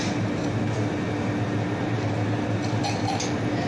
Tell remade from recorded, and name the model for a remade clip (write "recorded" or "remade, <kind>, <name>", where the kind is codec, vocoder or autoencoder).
recorded